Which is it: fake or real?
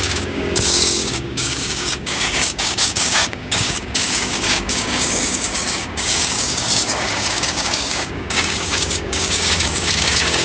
fake